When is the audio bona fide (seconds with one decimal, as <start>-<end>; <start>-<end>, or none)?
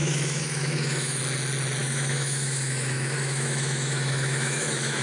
1.2-1.8